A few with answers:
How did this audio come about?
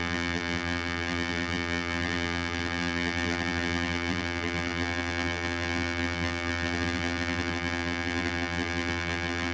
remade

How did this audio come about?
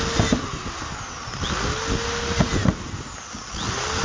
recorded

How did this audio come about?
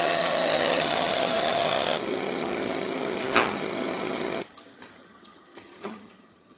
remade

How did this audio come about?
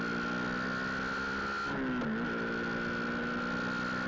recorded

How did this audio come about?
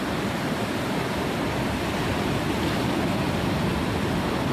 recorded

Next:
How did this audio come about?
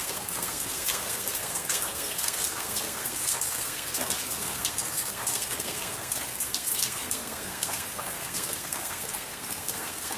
remade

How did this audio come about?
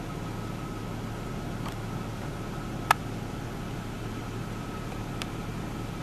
recorded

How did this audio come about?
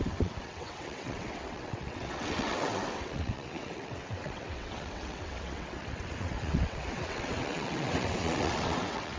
remade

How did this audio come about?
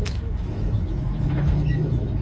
remade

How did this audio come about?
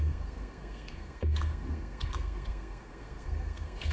remade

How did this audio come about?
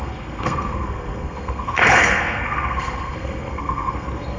remade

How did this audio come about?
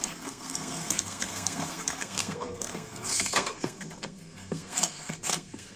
remade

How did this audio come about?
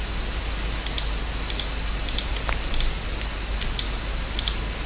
recorded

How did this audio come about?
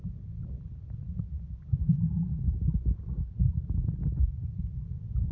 recorded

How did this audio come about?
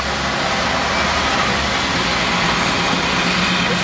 recorded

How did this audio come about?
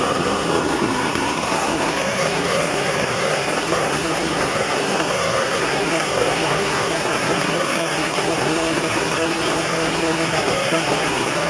remade